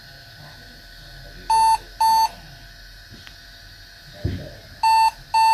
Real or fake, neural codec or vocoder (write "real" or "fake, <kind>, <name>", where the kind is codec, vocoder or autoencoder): real